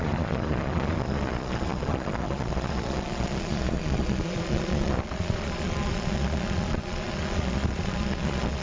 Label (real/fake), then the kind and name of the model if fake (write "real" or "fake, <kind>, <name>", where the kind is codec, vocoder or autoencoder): fake, vocoder, Vocos